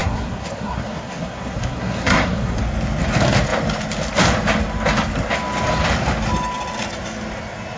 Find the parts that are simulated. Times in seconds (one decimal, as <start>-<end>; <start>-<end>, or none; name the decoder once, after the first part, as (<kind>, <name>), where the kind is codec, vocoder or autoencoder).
0.0-2.6 (codec, SNAC)